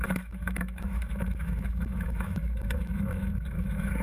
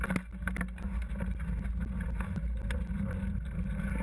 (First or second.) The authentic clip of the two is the second